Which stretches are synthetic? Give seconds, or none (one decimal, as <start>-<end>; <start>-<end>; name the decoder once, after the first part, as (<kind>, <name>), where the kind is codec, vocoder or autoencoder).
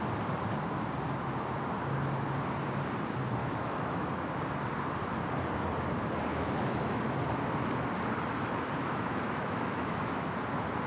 3.4-4.3 (autoencoder, DAC-VAE); 6.3-7.0; 8.8-10.3